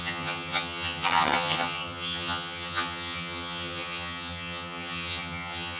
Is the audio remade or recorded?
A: remade